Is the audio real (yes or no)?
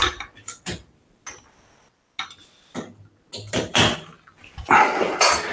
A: yes